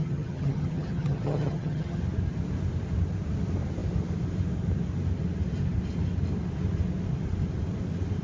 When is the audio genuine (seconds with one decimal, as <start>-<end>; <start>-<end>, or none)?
2.0-8.2